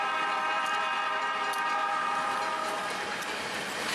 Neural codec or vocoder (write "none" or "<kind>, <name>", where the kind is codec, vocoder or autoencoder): vocoder, BigVGAN v2